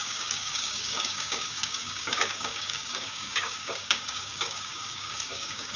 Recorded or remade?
remade